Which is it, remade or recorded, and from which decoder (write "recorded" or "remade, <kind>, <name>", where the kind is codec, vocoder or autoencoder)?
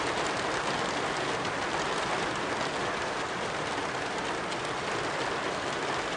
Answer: recorded